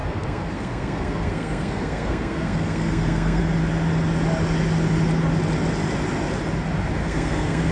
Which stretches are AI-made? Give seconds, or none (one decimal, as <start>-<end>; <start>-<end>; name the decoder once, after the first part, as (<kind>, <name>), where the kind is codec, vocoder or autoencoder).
0.0-3.4 (codec, SNAC); 7.0-7.7

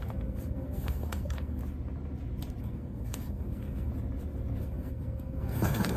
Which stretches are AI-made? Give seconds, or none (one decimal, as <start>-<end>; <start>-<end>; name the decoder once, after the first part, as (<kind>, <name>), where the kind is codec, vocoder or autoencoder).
0.0-1.6 (codec, SNAC); 2.6-3.9; 4.6-6.0

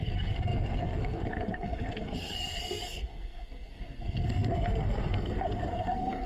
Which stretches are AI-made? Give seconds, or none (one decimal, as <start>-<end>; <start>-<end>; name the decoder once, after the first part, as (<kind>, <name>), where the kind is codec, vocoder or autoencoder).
0.0-6.3 (codec, SNAC)

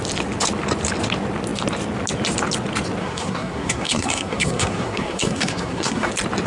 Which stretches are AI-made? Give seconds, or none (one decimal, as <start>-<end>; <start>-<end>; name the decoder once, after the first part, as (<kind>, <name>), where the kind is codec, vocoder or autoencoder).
3.0-6.1 (codec, SNAC)